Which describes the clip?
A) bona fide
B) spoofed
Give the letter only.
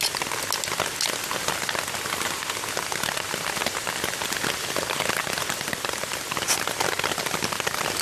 A